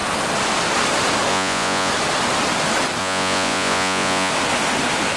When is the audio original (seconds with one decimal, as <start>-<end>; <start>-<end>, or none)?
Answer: 0.0-1.3; 1.9-3.0; 4.3-5.2